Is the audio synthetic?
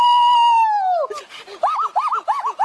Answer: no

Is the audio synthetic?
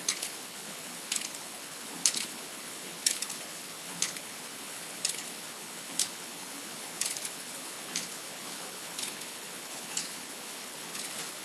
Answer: yes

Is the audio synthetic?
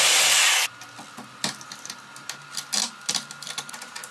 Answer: no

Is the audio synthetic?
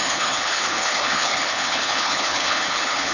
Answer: yes